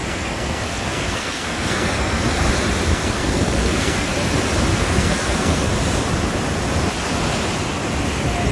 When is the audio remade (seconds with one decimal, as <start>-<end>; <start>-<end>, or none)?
0.0-2.4; 2.9-4.1; 4.7-5.7